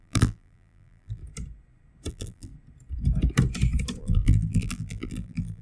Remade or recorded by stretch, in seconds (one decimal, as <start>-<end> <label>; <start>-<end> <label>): 0.0-1.2 remade; 1.2-2.1 recorded; 2.1-2.5 remade; 2.5-4.0 recorded; 4.0-5.6 remade